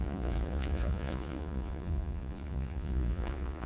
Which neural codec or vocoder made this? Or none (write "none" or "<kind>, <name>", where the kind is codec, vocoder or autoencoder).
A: vocoder, Vocos